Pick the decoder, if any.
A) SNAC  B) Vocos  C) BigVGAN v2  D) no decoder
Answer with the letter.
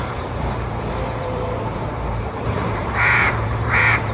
C